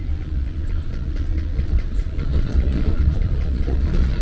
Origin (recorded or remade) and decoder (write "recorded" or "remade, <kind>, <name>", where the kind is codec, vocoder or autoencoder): remade, vocoder, Vocos